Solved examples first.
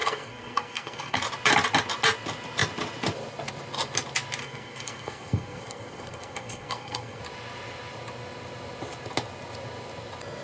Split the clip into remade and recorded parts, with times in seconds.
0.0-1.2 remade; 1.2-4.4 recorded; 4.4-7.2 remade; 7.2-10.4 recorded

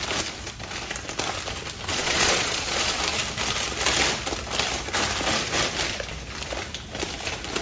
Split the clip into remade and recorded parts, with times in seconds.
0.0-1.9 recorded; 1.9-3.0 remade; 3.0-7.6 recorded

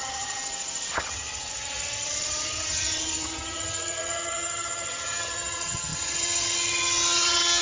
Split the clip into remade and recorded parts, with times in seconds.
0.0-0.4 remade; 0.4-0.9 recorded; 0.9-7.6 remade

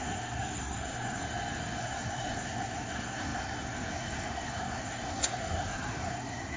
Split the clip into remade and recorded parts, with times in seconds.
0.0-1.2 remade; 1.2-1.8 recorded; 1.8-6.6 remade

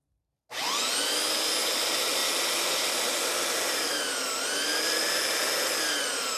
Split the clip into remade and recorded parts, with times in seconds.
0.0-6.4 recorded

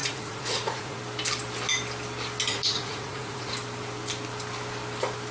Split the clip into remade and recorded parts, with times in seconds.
0.0-1.0 remade; 1.0-2.5 recorded; 2.5-3.5 remade; 3.5-5.3 recorded

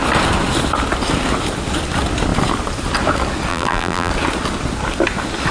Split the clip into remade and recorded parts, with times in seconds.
0.0-3.5 recorded; 3.5-4.1 remade; 4.1-5.5 recorded

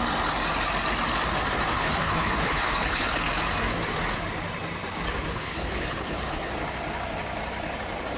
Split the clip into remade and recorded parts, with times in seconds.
0.0-1.8 recorded; 1.8-3.2 remade; 3.2-5.3 recorded; 5.3-6.5 remade; 6.5-8.2 recorded